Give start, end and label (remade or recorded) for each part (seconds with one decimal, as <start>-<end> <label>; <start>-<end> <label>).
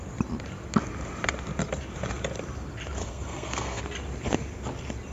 0.0-3.0 recorded; 3.0-3.8 remade; 3.8-5.1 recorded